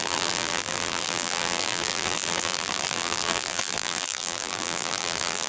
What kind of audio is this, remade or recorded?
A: remade